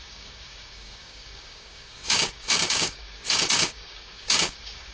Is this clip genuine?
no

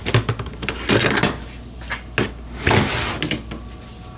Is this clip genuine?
yes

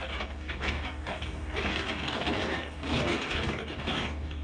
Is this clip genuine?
no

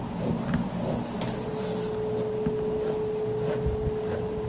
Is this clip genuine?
yes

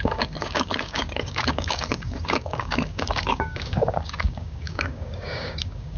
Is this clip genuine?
no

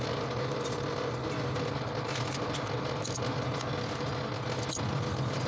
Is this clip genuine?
yes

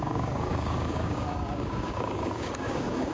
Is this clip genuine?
no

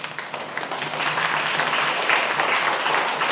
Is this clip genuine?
yes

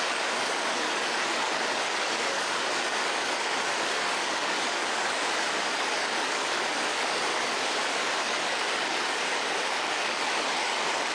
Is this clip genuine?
no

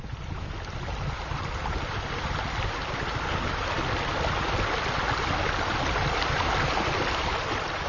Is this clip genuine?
yes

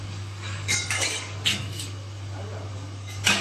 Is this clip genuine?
no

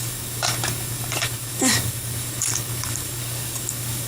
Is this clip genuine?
no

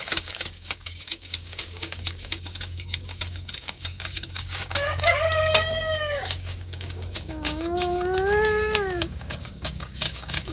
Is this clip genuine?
no